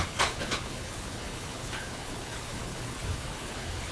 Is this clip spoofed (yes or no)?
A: yes